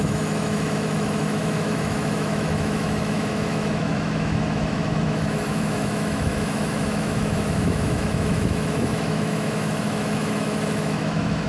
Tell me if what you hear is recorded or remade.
remade